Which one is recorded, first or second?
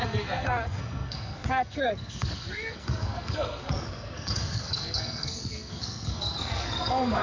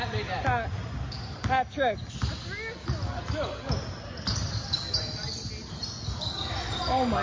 second